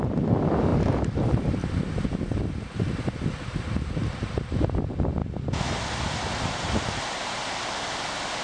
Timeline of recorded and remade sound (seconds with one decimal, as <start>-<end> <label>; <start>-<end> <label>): 0.0-5.2 remade; 5.2-7.7 recorded; 7.7-8.4 remade